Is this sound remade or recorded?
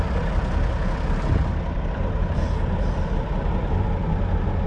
recorded